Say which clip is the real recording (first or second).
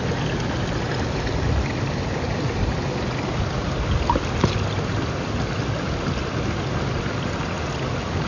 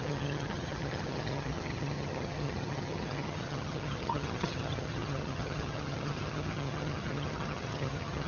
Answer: first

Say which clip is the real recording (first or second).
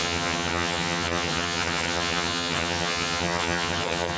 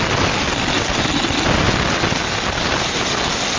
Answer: second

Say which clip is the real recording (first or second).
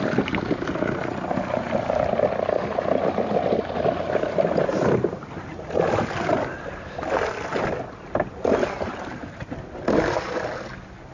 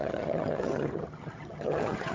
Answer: first